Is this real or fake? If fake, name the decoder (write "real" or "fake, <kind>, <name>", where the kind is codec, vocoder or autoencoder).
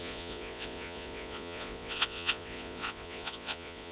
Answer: fake, vocoder, Vocos